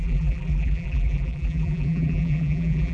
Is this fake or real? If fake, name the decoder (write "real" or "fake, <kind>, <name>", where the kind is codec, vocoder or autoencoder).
fake, vocoder, BigVGAN v2